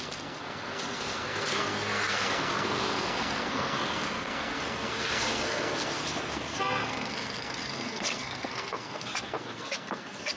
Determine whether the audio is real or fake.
fake